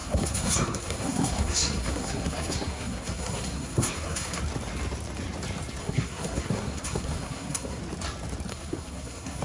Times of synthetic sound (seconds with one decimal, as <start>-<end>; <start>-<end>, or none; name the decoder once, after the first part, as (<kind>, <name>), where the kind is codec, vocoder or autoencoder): 0.0-4.4 (codec, SNAC); 5.8-7.8; 8.5-9.4